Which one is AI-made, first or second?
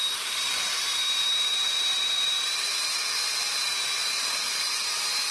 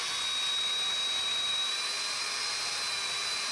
first